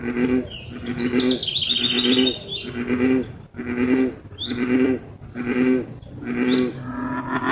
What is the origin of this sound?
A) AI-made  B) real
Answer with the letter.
B